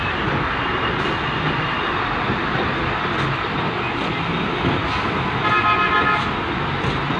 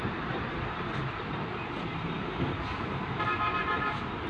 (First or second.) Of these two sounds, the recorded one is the first